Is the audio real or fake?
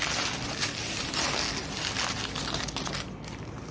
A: real